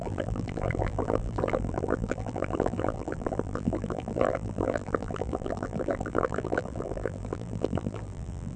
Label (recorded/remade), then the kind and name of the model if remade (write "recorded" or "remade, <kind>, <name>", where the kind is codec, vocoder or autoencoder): remade, vocoder, BigVGAN v2